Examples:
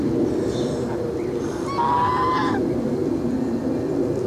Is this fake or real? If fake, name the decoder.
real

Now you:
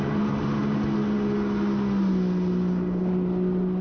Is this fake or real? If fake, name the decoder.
real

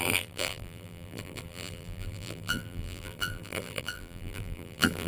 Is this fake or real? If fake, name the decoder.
fake, vocoder, BigVGAN v2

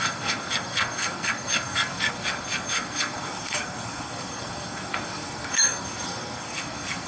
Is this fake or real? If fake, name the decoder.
fake, codec, SNAC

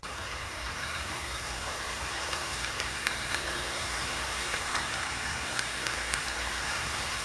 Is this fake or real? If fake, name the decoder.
fake, codec, SNAC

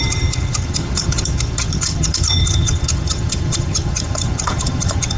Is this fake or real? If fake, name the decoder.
fake, vocoder, HiFi-GAN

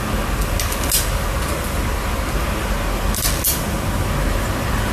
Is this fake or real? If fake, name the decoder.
real